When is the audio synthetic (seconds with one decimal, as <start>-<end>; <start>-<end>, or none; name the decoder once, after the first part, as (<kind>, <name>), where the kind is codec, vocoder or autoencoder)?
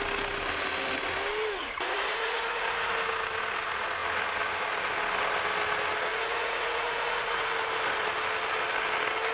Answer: 1.6-2.9 (vocoder, Vocos); 6.1-7.5